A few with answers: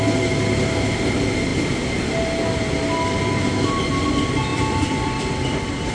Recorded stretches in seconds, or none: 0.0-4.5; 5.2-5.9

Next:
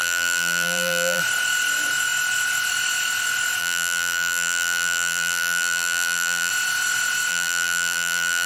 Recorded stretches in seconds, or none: 1.2-3.6; 6.5-7.3

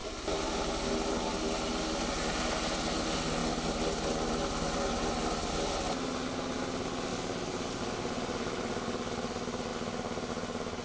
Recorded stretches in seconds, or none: 0.7-10.8

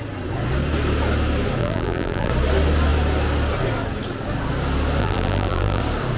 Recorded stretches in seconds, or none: 0.0-1.6; 2.3-5.0; 5.8-6.2

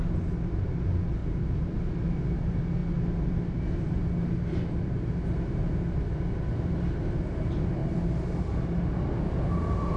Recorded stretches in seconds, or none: 0.0-1.2; 1.7-7.8; 8.4-10.0

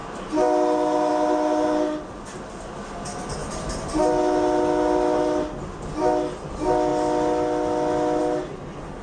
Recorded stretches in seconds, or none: 0.0-3.4; 4.0-9.0

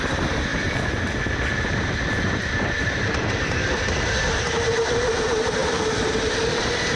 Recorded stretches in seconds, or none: 0.0-5.6; 6.6-7.0

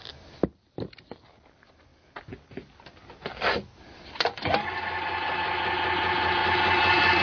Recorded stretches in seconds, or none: 0.0-7.2